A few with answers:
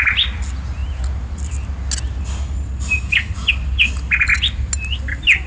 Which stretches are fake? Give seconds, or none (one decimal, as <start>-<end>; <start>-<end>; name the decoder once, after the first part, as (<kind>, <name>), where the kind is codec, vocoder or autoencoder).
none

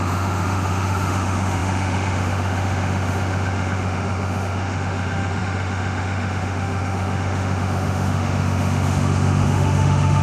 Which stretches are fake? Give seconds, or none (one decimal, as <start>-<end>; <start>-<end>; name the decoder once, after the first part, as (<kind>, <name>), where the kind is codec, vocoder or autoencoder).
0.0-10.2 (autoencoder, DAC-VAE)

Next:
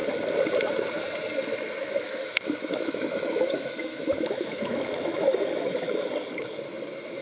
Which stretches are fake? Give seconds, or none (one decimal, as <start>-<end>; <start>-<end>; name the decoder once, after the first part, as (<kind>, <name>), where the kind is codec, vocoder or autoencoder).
1.8-6.1 (autoencoder, DAC-VAE)